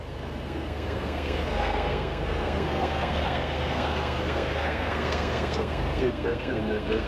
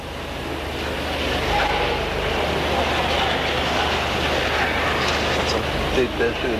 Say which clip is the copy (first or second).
first